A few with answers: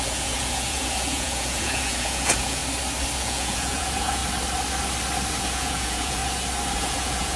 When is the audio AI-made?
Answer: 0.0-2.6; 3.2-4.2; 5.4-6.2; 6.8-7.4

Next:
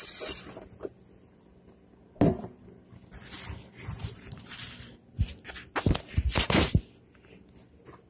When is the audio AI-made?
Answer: 4.0-4.9

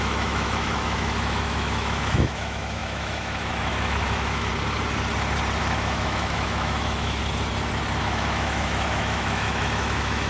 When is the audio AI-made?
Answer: 0.0-4.5; 5.6-7.2; 8.0-10.3

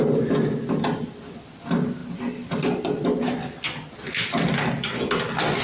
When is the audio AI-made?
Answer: none

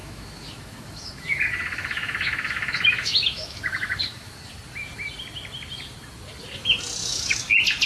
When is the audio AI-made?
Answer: 0.0-4.4; 7.0-7.5

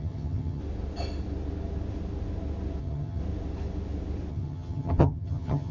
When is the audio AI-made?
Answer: 0.0-0.6; 2.8-3.2; 4.3-5.7

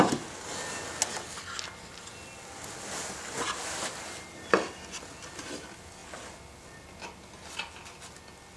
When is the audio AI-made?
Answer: none